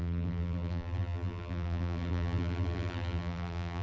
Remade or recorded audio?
remade